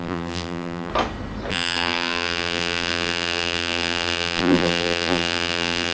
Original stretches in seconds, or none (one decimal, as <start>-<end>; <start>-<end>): 0.9-1.5